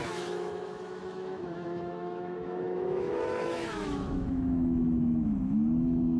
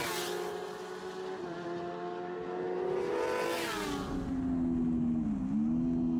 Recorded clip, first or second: second